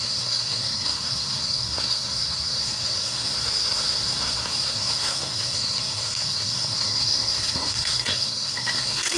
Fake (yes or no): yes